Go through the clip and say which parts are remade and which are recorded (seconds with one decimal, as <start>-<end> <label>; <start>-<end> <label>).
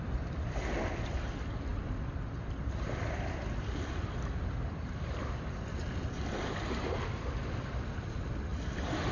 0.0-9.1 recorded